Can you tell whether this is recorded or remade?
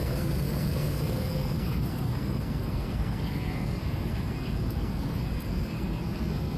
remade